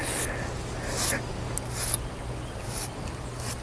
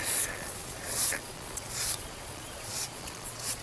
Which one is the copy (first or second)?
second